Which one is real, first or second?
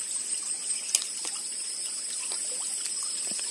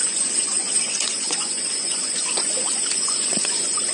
first